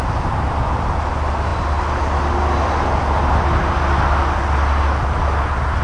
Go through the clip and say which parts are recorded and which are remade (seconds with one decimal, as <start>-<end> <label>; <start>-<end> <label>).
0.0-5.8 recorded